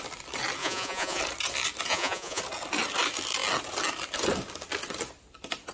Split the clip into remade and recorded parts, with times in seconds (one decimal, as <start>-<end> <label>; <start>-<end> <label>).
0.0-0.6 recorded; 0.6-1.2 remade; 1.2-1.9 recorded; 1.9-2.4 remade; 2.4-5.7 recorded